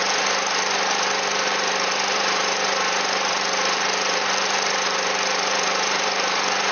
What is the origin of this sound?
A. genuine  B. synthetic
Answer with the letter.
B